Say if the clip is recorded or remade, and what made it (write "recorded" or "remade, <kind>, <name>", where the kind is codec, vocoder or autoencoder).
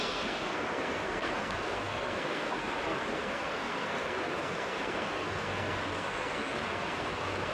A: remade, codec, SNAC